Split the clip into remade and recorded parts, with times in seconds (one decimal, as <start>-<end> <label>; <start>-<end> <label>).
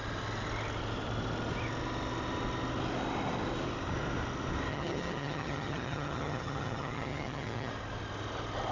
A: 0.0-4.7 recorded; 4.7-7.7 remade; 7.7-8.7 recorded